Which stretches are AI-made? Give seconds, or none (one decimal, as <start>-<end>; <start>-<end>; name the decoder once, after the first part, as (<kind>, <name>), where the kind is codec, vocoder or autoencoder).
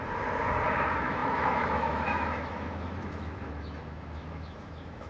0.7-5.1 (autoencoder, DAC-VAE)